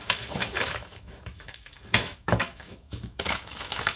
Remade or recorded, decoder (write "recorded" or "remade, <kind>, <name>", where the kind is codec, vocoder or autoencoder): remade, autoencoder, DAC-VAE